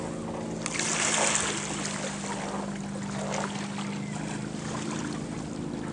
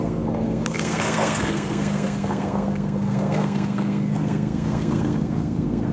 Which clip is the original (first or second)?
first